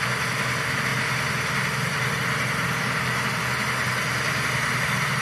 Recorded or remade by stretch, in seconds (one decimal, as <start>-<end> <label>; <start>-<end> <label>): 0.0-5.2 recorded